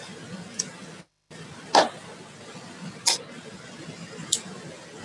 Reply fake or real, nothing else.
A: real